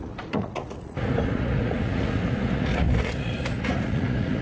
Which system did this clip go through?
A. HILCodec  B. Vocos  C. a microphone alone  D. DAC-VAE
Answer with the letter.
B